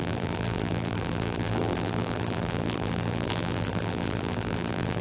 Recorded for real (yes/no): no